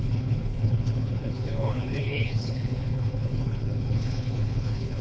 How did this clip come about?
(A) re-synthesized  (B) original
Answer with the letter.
A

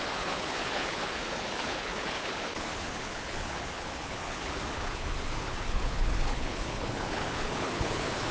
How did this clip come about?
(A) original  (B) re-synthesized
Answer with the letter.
B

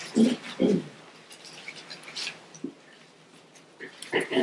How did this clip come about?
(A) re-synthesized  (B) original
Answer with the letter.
B